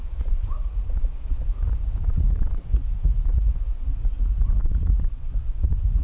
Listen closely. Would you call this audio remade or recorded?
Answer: remade